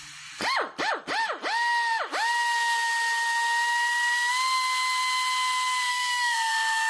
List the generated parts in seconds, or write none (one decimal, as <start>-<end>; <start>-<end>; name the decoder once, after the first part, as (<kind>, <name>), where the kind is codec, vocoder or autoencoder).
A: 5.9-6.9 (codec, SNAC)